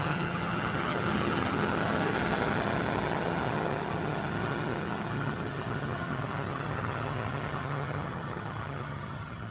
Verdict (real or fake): fake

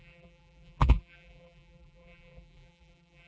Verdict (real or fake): fake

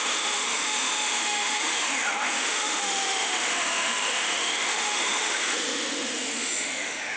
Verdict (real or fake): fake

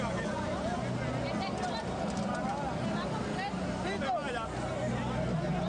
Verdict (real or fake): real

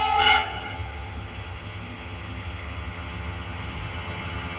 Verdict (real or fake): fake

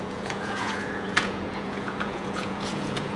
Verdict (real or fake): fake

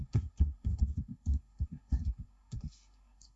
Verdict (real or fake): fake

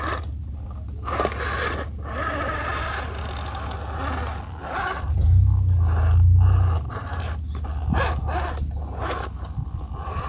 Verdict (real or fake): real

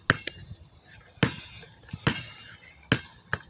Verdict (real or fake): real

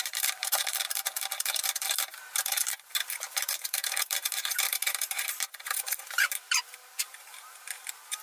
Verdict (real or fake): fake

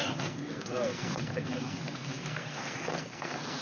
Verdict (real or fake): fake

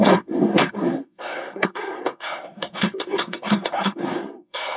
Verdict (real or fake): fake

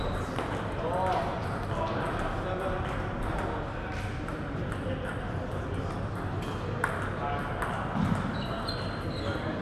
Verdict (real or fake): real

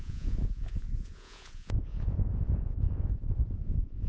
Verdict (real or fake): fake